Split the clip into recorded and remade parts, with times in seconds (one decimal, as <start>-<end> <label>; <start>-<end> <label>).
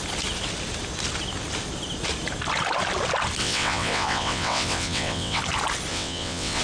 0.0-3.4 recorded; 3.4-5.4 remade; 5.4-5.9 recorded; 5.9-6.6 remade